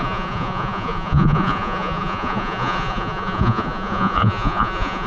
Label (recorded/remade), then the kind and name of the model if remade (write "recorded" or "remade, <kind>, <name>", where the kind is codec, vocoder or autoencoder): remade, vocoder, Vocos